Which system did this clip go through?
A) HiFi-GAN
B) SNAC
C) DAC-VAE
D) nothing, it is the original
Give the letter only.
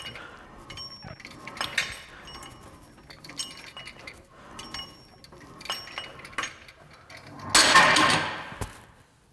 D